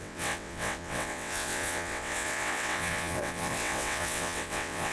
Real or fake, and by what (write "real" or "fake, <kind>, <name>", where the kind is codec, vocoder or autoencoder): fake, vocoder, WaveNeXt